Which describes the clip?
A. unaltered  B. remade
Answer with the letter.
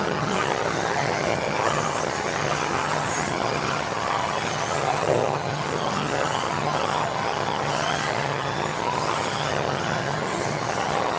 B